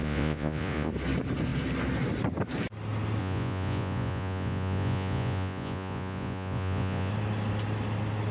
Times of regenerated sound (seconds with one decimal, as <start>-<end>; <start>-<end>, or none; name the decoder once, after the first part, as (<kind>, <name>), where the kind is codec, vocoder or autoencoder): 0.0-0.9 (vocoder, Vocos); 3.2-7.1